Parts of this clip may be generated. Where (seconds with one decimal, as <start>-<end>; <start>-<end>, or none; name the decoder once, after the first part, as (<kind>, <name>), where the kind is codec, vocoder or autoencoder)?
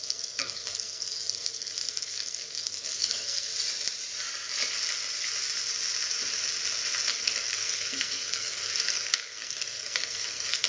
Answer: 0.0-3.5 (codec, SNAC); 7.2-10.7